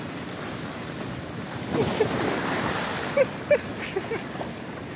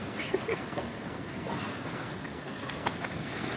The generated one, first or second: second